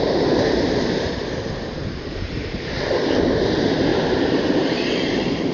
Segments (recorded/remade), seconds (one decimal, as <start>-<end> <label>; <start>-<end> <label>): 0.0-5.5 remade